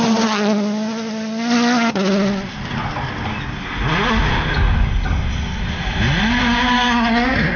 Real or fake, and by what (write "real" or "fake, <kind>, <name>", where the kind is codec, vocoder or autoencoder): real